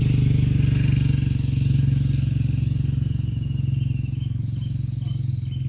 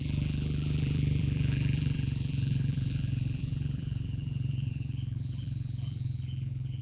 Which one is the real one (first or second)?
first